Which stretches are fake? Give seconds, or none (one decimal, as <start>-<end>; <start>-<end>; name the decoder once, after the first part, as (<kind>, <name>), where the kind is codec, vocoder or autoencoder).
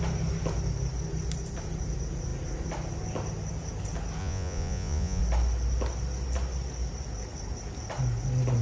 4.2-5.2 (vocoder, Vocos)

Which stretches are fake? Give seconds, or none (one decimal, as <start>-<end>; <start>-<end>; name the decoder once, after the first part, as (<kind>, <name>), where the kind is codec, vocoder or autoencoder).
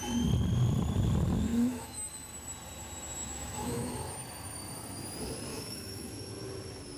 1.5-2.1 (autoencoder, DAC-VAE); 3.2-3.9; 5.5-6.1